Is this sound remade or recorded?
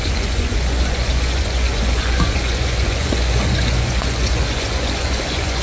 remade